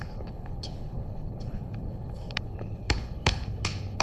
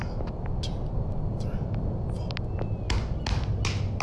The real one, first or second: second